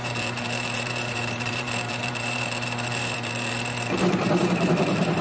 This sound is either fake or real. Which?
fake